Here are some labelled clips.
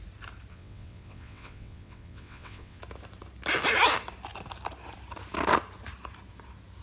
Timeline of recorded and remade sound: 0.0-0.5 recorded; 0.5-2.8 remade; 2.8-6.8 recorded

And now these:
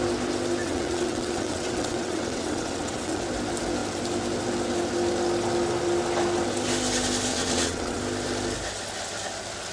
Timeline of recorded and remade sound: 0.0-0.6 recorded; 0.6-3.2 remade; 3.2-7.3 recorded; 7.3-8.0 remade; 8.0-9.7 recorded

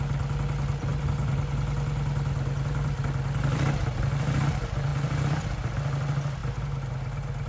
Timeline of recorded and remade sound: 0.0-7.5 recorded

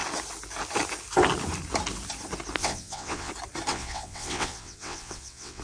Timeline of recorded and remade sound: 0.0-2.6 recorded; 2.6-3.3 remade; 3.3-3.7 recorded; 3.7-5.6 remade

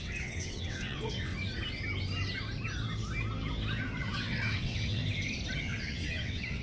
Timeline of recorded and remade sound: 0.0-1.3 remade; 1.3-4.0 recorded; 4.0-5.0 remade; 5.0-5.6 recorded; 5.6-6.6 remade